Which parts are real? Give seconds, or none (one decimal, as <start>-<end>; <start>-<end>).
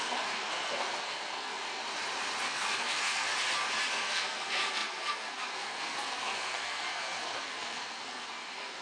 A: 1.8-2.4; 3.3-3.9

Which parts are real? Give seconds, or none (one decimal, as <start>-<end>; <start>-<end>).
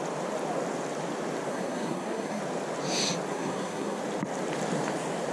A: 0.0-1.5; 2.4-3.3; 4.0-5.3